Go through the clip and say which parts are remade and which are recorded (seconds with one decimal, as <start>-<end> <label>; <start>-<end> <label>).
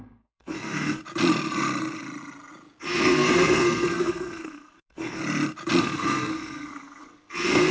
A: 0.0-1.0 remade; 1.0-2.8 recorded; 2.8-5.2 remade; 5.2-5.8 recorded; 5.8-7.7 remade